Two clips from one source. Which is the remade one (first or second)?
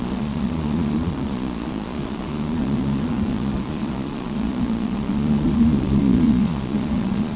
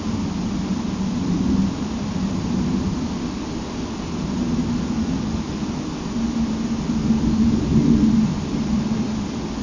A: first